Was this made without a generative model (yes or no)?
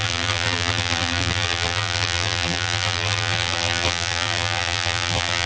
no